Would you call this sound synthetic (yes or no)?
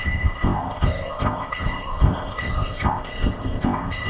yes